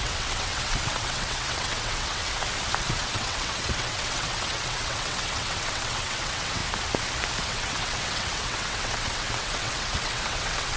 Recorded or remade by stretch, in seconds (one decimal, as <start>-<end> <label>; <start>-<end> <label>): 0.0-2.2 remade; 2.2-2.8 recorded; 2.8-6.6 remade; 6.6-7.4 recorded; 7.4-10.8 remade